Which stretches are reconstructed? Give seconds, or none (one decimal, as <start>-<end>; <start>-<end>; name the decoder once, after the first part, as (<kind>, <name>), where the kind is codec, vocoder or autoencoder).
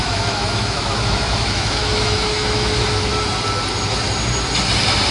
0.0-3.1 (autoencoder, DAC-VAE)